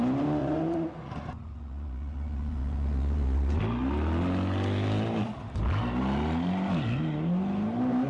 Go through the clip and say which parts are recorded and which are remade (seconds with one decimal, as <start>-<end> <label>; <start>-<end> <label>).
0.0-0.4 recorded; 0.4-3.6 remade; 3.6-8.1 recorded